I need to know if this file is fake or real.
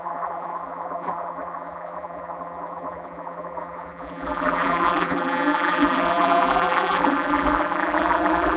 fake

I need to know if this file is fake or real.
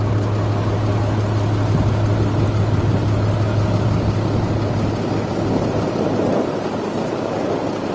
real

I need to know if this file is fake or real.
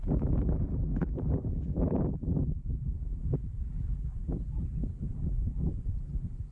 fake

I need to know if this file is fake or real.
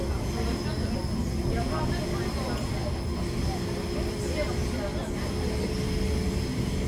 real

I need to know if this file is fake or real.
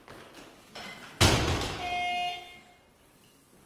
real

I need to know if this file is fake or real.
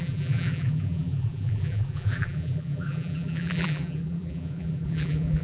fake